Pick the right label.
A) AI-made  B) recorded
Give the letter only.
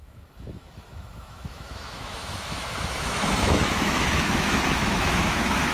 A